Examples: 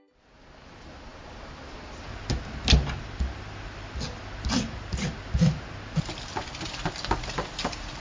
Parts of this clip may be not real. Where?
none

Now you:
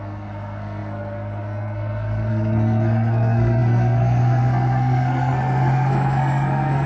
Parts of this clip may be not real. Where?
0.0-6.9 (codec, SNAC)

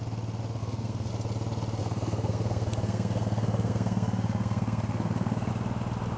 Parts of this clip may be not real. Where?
0.6-1.1 (codec, SNAC); 1.8-5.5

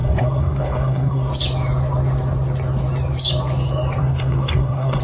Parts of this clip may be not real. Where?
0.0-1.3 (codec, SNAC); 4.0-5.0